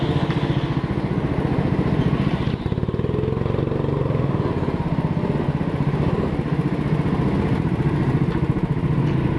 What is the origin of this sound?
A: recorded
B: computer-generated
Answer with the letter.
A